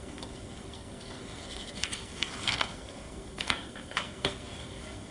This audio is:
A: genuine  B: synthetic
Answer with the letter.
B